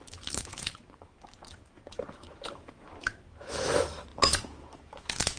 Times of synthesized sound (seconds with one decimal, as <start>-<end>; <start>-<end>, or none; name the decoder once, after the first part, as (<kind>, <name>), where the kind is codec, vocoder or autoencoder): 0.0-5.4 (autoencoder, DAC-VAE)

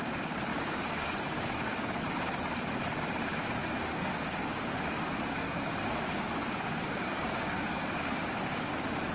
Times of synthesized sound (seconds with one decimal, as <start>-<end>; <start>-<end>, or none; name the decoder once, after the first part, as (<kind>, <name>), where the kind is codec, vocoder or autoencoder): 0.5-2.0 (codec, DAC); 3.6-8.7

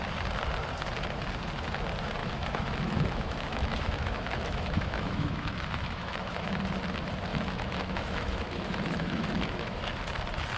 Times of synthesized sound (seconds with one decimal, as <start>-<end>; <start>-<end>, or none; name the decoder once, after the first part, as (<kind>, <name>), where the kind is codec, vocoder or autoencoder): 2.2-6.6 (autoencoder, DAC-VAE); 7.3-10.0

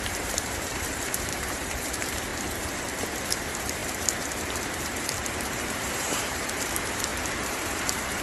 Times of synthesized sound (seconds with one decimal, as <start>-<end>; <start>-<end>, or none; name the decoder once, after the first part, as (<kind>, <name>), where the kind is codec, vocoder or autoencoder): 0.0-2.3 (vocoder, BigVGAN v2); 3.3-8.2

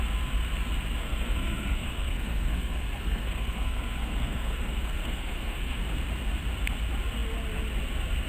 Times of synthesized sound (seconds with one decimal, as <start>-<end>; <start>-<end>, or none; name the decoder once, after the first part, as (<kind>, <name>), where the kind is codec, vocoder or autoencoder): 1.0-5.8 (codec, SNAC)